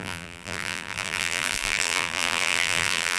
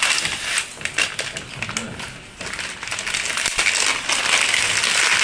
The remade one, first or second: first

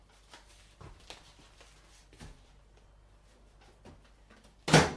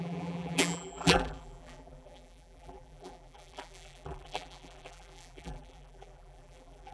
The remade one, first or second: second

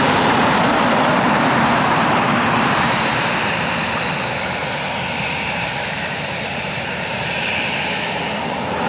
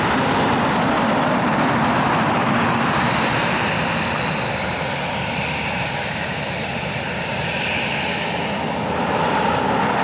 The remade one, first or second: first